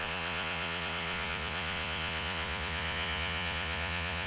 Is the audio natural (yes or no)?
no